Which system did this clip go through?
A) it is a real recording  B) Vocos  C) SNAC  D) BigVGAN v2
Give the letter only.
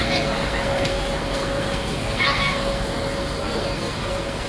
C